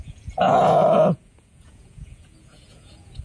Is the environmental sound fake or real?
fake